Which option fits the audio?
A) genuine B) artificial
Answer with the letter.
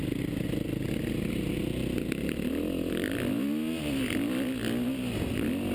A